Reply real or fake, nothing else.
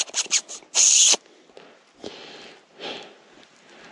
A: real